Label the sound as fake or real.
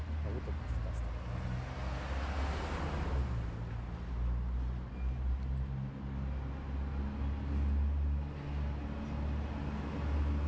real